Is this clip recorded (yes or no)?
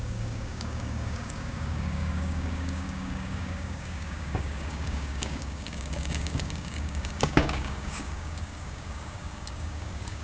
no